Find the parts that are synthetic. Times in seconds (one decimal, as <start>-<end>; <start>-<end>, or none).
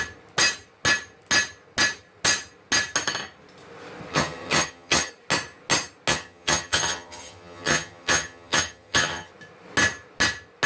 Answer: 4.1-5.1; 6.1-9.3